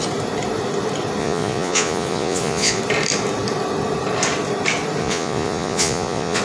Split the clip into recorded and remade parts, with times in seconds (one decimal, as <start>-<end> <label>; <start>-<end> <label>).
0.0-1.2 recorded; 1.2-2.8 remade; 2.8-5.0 recorded; 5.0-6.4 remade